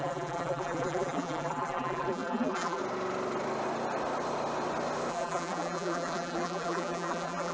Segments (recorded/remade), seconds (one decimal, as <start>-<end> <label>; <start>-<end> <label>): 0.0-2.8 remade; 2.8-5.1 recorded; 5.1-7.5 remade